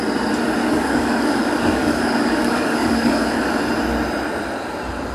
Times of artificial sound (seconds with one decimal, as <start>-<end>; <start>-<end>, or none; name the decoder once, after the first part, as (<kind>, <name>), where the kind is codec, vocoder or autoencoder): 0.6-3.4 (codec, DAC)